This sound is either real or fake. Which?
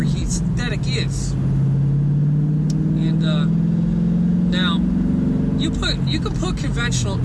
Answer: real